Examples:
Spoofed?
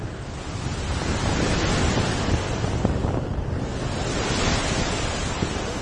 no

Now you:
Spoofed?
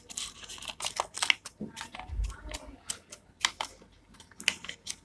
no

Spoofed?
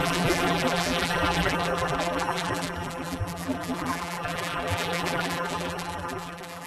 yes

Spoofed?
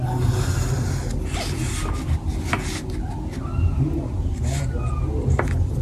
no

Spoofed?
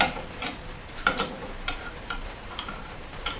yes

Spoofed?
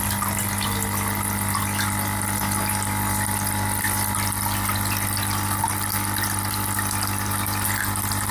no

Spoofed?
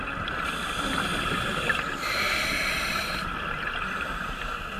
no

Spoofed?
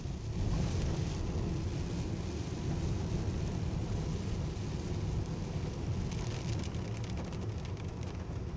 no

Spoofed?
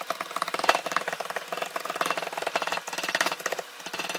no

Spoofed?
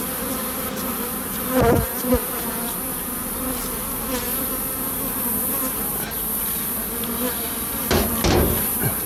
no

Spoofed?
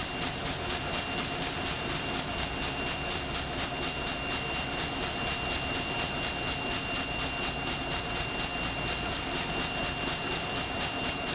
no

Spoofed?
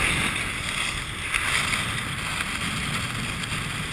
no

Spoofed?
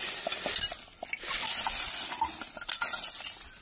no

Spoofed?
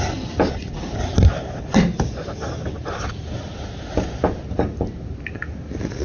no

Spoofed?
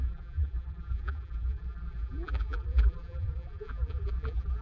yes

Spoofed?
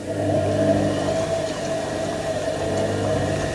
yes